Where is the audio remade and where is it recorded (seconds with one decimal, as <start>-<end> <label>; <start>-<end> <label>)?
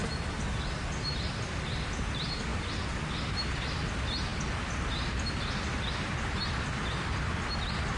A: 0.0-8.0 recorded